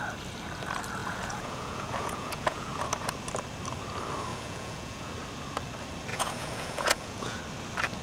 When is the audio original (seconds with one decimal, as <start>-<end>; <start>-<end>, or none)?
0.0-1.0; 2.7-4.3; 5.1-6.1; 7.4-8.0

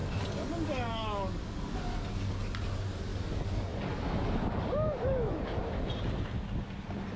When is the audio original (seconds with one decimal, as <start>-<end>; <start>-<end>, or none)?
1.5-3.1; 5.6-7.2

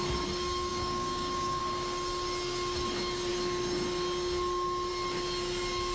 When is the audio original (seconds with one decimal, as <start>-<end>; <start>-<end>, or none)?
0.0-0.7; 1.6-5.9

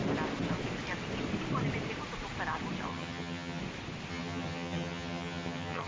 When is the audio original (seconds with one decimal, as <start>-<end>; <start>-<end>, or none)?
0.0-2.9; 3.6-4.1

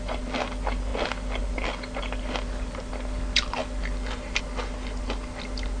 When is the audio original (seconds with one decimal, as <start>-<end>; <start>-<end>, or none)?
0.0-5.8

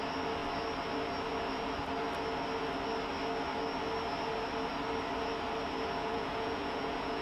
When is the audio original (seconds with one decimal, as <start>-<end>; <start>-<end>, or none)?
0.0-6.0

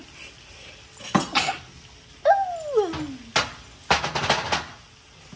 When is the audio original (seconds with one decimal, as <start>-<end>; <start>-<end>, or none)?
0.0-5.4